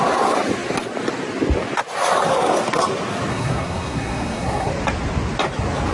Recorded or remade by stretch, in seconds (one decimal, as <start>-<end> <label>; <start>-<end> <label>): 0.0-3.3 recorded; 3.3-4.7 remade; 4.7-5.9 recorded